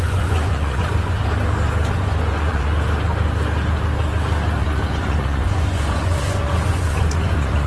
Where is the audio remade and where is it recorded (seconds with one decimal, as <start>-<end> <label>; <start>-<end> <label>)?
0.0-1.2 remade; 1.2-1.9 recorded; 1.9-2.7 remade; 2.7-4.6 recorded; 4.6-7.7 remade